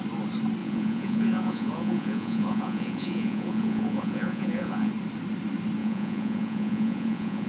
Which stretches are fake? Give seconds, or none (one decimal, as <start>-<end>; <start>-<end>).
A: 0.6-4.9; 5.8-7.5